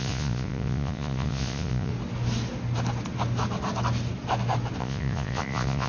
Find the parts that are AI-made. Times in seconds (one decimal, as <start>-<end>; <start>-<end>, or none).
0.0-1.9; 4.8-5.9